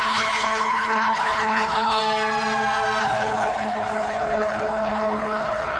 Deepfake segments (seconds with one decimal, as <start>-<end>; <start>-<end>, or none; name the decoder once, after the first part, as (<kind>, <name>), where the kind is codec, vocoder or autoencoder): 0.0-2.0 (codec, HILCodec); 3.0-5.8